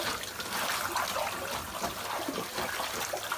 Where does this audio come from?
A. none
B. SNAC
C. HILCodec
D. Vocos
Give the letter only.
A